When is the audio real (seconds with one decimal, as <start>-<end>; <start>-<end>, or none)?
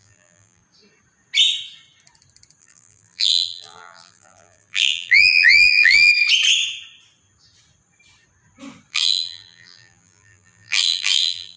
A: 0.6-2.6; 6.1-8.9